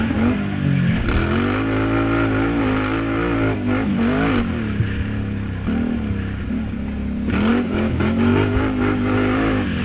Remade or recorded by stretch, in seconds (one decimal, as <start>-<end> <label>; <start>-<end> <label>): 0.0-7.5 recorded; 7.5-9.8 remade